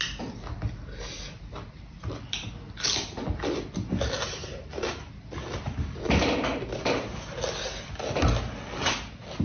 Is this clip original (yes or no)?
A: yes